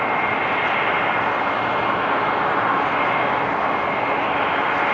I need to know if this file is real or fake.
real